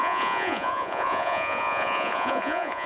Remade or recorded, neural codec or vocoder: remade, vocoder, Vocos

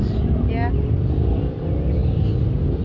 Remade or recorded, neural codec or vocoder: recorded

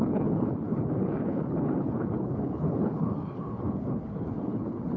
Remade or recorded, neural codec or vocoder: remade, codec, HILCodec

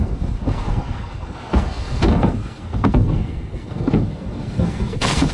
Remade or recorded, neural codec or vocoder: remade, codec, SNAC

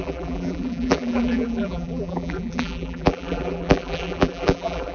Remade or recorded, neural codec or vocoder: remade, vocoder, BigVGAN v2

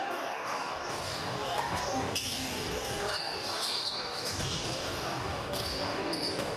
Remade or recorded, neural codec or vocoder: remade, codec, DAC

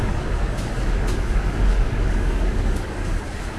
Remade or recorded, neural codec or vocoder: remade, codec, DAC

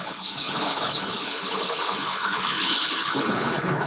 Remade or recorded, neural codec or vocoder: remade, codec, HILCodec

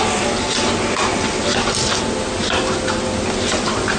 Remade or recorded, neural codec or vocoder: recorded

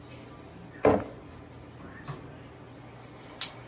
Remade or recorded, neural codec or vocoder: recorded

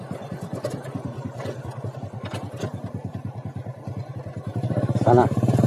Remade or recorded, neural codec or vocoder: remade, vocoder, BigVGAN v2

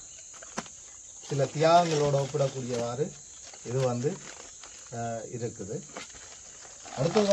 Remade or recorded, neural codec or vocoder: recorded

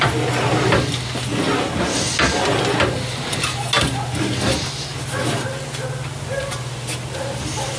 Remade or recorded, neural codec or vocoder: recorded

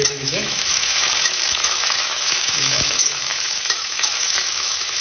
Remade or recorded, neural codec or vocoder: remade, autoencoder, DAC-VAE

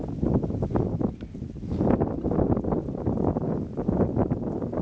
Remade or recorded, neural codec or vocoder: recorded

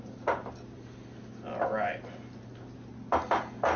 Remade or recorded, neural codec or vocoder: recorded